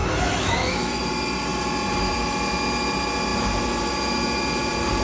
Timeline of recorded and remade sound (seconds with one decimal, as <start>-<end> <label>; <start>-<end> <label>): 0.0-1.0 remade; 1.0-5.0 recorded